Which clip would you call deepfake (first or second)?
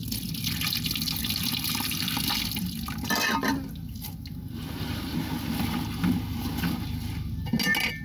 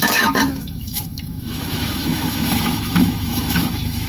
second